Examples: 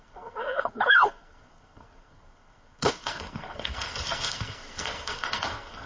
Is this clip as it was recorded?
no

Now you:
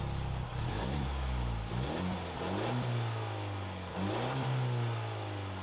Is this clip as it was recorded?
yes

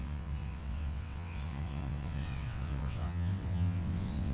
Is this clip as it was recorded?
no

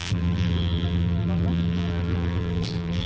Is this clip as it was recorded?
no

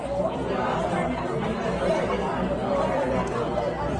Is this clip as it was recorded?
yes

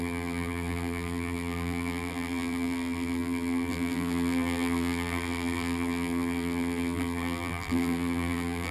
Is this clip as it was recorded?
no